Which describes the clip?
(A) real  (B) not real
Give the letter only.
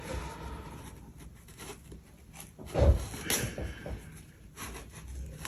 A